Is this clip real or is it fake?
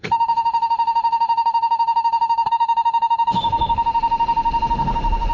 fake